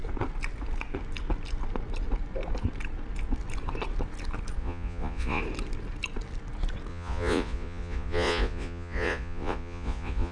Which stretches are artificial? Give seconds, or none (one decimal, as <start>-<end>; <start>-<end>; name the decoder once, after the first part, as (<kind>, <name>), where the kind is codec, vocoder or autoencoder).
4.6-5.4 (vocoder, Vocos); 6.9-10.3